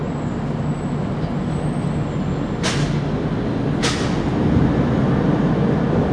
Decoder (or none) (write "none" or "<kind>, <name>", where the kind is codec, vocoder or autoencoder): none